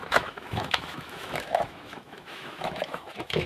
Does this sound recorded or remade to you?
remade